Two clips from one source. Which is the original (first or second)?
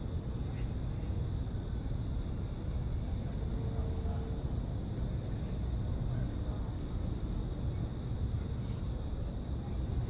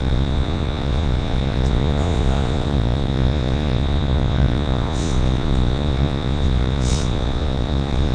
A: first